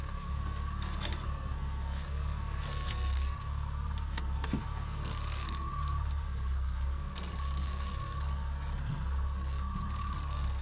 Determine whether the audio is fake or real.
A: fake